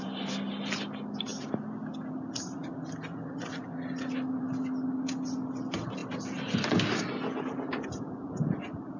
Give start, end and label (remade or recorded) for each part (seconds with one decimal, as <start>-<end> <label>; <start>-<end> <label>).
0.0-9.0 recorded